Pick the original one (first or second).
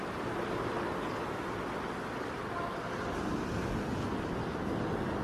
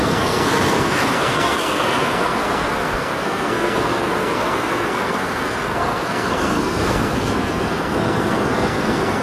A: first